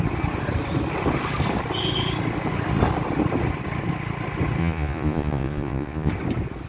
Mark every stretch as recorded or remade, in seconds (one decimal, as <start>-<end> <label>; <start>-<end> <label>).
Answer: 0.0-4.6 recorded; 4.6-6.1 remade; 6.1-6.7 recorded

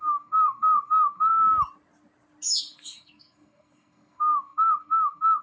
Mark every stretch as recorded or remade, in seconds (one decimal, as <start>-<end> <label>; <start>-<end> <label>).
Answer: 0.0-1.3 remade; 1.3-2.6 recorded; 2.6-5.4 remade

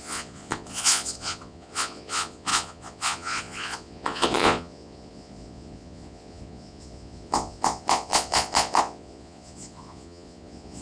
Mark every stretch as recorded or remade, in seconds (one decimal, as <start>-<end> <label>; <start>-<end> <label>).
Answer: 0.0-10.8 remade

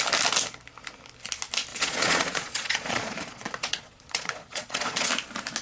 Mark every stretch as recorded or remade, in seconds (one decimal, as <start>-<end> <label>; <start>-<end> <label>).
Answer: 0.0-1.7 recorded; 1.7-5.1 remade; 5.1-5.6 recorded

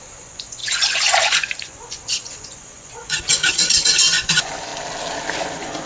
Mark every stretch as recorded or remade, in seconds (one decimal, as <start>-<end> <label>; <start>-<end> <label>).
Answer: 0.0-4.7 remade; 4.7-5.4 recorded; 5.4-5.9 remade

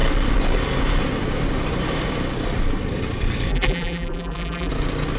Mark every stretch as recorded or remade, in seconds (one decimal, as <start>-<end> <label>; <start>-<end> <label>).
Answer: 0.0-3.5 recorded; 3.5-4.7 remade; 4.7-5.2 recorded